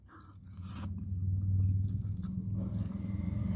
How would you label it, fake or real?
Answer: real